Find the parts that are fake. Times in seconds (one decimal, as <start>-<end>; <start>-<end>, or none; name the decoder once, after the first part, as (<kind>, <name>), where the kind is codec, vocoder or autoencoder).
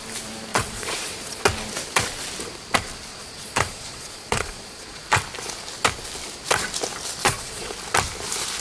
0.5-1.4 (vocoder, Vocos); 3.1-5.2; 7.2-7.7